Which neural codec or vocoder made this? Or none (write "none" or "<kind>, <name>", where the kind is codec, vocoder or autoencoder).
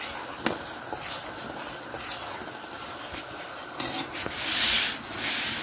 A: none